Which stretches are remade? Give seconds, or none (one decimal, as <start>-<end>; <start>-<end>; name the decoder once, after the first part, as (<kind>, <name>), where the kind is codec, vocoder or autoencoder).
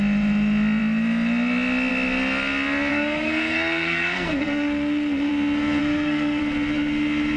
2.9-5.3 (codec, SNAC); 5.8-6.4